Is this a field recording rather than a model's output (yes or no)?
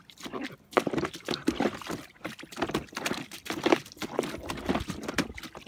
yes